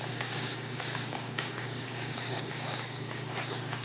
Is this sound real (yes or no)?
no